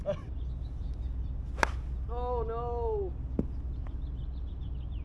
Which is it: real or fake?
real